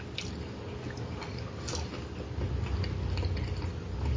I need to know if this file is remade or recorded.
recorded